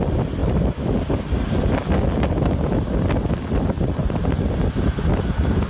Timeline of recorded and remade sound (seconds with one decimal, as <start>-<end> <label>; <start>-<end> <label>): 0.0-5.7 recorded